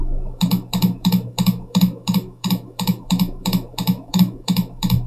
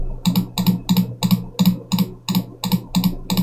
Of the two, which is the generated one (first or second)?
first